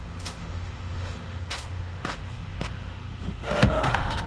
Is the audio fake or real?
fake